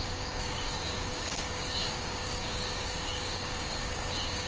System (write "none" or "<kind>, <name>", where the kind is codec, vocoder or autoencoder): codec, DAC